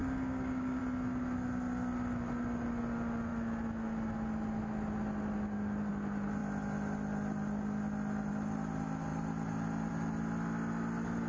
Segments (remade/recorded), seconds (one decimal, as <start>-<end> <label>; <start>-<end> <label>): 0.0-0.8 remade; 0.8-11.3 recorded

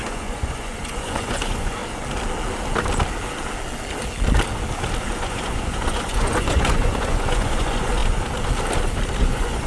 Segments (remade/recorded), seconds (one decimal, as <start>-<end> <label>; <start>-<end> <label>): 0.0-1.8 remade; 1.8-5.2 recorded; 5.2-8.0 remade; 8.0-9.2 recorded; 9.2-9.7 remade

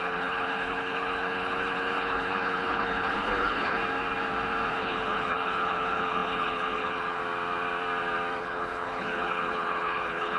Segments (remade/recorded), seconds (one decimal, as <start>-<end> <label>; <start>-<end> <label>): 0.0-3.8 remade; 3.8-4.7 recorded; 4.7-7.2 remade; 7.2-8.4 recorded; 8.4-10.4 remade

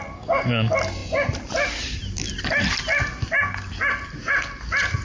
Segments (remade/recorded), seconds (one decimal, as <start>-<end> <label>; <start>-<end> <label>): 0.0-5.0 recorded

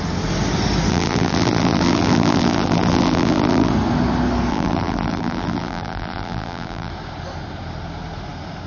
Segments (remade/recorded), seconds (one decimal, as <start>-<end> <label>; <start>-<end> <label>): 0.0-0.9 recorded; 0.9-3.7 remade; 3.7-4.5 recorded; 4.5-6.9 remade; 6.9-8.7 recorded

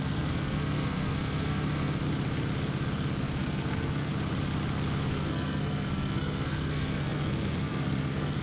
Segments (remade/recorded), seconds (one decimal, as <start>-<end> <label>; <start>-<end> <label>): 0.0-2.0 remade; 2.0-3.2 recorded; 3.2-4.1 remade; 4.1-5.1 recorded; 5.1-8.4 remade